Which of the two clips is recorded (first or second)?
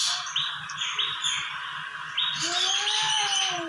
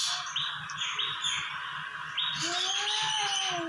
second